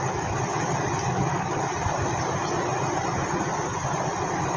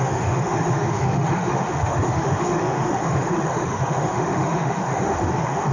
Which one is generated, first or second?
second